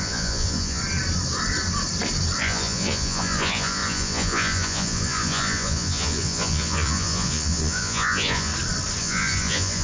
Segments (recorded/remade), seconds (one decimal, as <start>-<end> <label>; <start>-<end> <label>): 0.0-0.8 remade; 0.8-2.4 recorded; 2.4-8.5 remade; 8.5-9.0 recorded; 9.0-9.8 remade